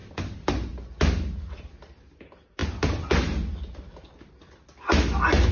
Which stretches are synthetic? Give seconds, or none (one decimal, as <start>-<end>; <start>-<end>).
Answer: none